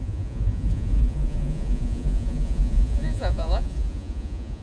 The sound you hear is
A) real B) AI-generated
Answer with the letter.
B